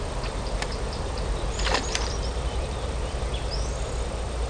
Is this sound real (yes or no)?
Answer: no